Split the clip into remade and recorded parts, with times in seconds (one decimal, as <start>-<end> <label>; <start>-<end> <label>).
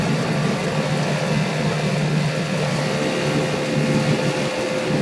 0.0-5.0 recorded